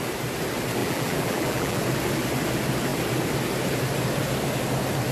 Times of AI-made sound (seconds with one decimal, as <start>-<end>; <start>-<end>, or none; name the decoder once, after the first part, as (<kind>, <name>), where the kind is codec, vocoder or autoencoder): 0.8-1.8 (vocoder, BigVGAN v2)